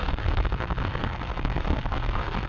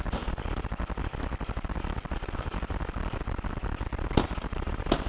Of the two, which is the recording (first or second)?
second